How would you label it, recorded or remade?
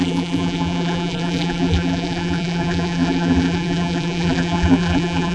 remade